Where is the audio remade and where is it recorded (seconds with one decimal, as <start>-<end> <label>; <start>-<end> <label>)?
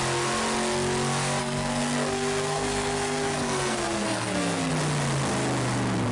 0.0-1.4 recorded; 1.4-4.7 remade; 4.7-6.1 recorded